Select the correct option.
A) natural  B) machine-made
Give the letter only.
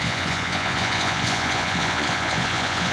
B